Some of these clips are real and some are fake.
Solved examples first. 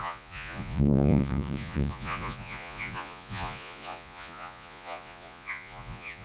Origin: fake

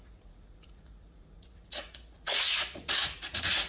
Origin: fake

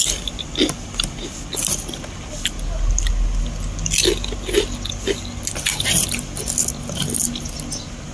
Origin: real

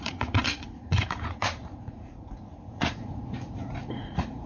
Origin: fake